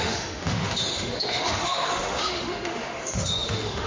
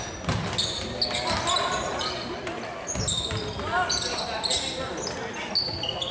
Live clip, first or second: second